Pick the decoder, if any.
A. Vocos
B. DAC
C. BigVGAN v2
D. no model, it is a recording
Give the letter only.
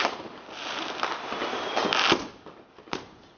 D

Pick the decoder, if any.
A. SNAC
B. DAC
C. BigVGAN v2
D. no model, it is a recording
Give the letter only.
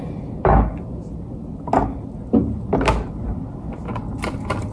D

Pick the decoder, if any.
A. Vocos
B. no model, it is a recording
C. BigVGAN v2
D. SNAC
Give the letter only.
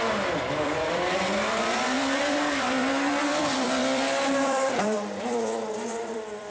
C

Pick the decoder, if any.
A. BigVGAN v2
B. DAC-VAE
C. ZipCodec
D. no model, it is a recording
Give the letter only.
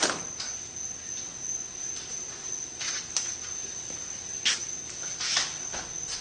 D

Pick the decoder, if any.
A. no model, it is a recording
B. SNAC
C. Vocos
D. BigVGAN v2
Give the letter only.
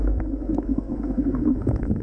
B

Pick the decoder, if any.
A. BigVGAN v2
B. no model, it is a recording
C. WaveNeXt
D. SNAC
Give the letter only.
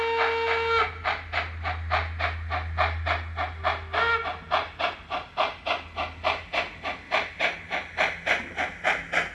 B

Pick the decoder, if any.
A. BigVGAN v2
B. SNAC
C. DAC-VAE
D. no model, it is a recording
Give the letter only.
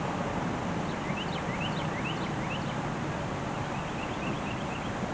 D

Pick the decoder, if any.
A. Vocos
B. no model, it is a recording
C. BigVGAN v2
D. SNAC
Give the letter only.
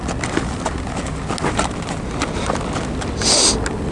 B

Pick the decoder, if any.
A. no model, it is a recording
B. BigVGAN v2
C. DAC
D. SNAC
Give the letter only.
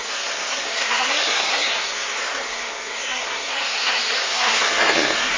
D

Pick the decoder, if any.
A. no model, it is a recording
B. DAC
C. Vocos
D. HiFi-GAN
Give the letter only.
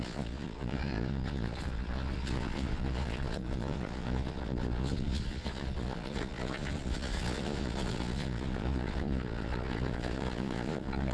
C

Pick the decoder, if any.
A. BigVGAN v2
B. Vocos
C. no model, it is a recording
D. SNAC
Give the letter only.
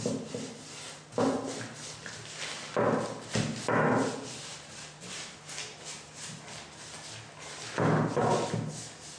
C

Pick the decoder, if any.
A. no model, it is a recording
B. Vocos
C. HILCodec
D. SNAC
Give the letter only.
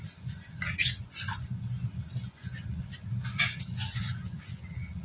B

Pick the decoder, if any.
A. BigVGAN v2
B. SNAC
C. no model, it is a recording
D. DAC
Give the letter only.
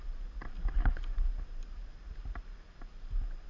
C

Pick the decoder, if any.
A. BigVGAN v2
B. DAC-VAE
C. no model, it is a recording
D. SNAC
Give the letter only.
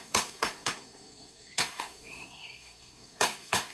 D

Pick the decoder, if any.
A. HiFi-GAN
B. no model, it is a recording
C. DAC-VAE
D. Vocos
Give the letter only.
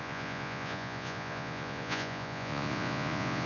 D